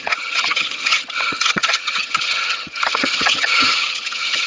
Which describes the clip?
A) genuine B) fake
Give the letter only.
B